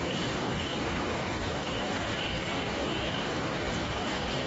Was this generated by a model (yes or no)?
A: yes